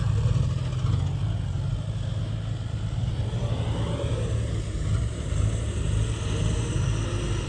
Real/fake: real